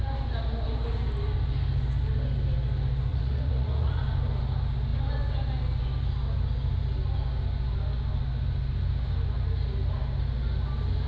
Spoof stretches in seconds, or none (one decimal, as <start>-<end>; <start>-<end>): 3.1-4.0